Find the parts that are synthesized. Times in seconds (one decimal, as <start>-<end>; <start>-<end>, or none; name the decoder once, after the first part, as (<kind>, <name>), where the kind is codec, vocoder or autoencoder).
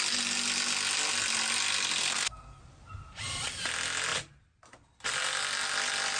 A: 2.0-2.6 (codec, SNAC)